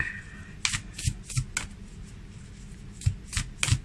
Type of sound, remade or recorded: recorded